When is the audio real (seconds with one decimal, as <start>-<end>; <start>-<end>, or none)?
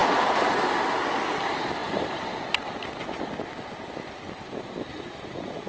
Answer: 0.6-4.9